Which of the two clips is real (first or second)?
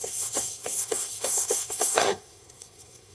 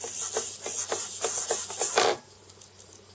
second